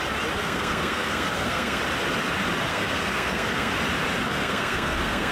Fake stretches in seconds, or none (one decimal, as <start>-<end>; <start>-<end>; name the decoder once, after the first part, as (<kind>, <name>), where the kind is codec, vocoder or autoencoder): 0.4-1.8 (codec, SNAC); 2.7-3.7; 4.3-5.3